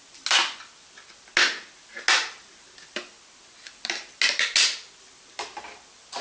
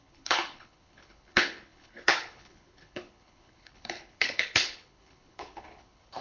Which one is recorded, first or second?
first